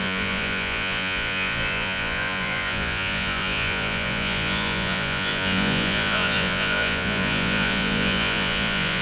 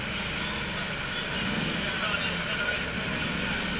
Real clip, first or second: second